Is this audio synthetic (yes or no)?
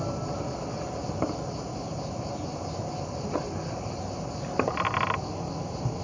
no